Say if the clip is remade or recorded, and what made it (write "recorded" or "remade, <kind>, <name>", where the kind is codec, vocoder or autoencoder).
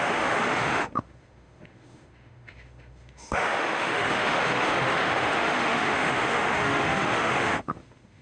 remade, autoencoder, DAC-VAE